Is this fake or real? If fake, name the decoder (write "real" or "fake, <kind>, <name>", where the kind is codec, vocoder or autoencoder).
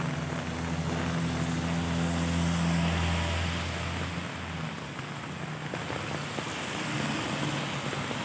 real